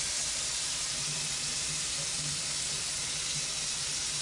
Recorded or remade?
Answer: remade